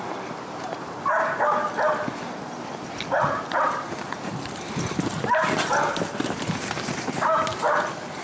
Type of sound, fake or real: real